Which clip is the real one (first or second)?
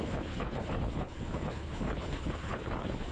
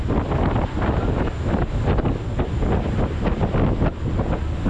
second